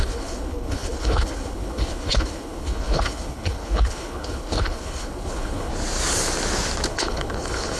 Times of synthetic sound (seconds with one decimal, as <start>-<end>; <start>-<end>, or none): 0.0-5.7; 6.9-7.8